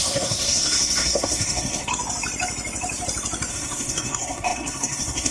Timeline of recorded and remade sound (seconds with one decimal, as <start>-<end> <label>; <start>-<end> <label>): 0.0-1.9 remade; 1.9-3.5 recorded; 3.5-5.3 remade